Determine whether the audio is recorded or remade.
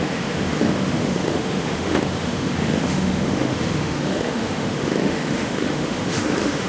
remade